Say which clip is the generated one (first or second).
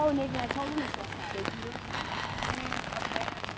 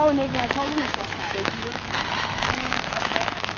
second